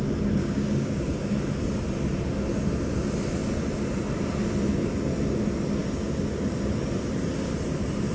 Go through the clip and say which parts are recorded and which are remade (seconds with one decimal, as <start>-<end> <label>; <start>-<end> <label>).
0.0-0.4 recorded; 0.4-1.3 remade; 1.3-8.1 recorded